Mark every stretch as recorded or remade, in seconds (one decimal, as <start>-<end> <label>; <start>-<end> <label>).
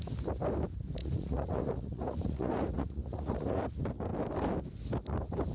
0.0-1.0 recorded; 1.0-3.6 remade; 3.6-5.5 recorded